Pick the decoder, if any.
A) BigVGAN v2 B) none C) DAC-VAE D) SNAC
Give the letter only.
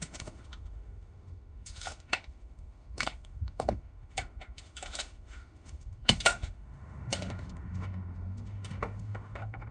C